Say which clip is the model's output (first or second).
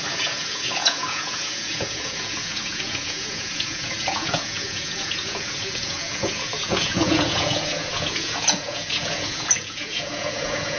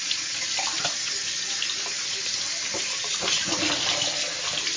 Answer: first